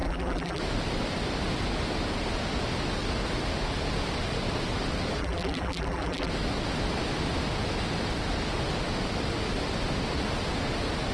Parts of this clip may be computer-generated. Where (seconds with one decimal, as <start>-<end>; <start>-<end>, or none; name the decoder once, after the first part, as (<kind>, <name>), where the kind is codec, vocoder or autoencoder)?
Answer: 0.0-0.6 (vocoder, BigVGAN v2); 5.2-6.3